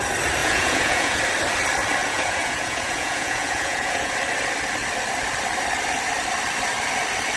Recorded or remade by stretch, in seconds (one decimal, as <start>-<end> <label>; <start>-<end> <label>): 0.0-0.4 recorded; 0.4-1.2 remade; 1.2-2.0 recorded; 2.0-4.1 remade; 4.1-7.4 recorded